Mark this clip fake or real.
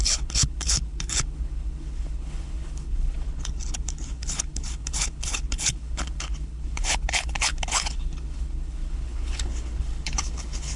fake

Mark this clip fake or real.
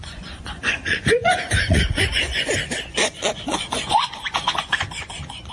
fake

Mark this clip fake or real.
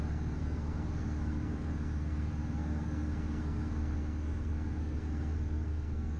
fake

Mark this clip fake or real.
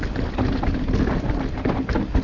real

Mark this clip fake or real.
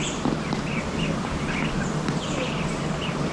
real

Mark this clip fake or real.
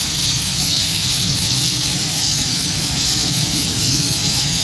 fake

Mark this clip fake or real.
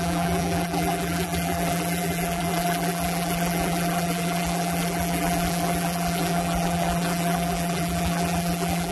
fake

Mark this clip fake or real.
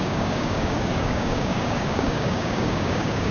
fake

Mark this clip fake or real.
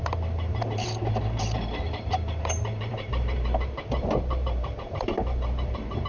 fake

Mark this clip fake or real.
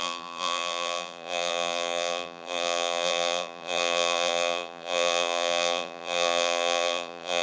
fake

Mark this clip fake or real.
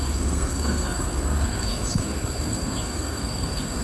fake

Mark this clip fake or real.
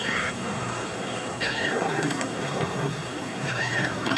fake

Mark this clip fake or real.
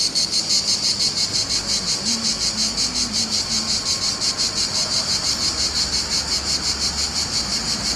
real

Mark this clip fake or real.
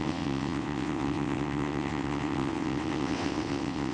fake